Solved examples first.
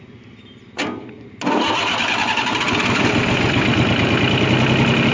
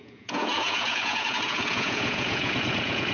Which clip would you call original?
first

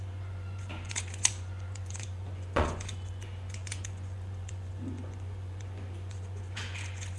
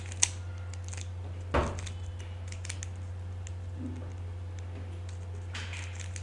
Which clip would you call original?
second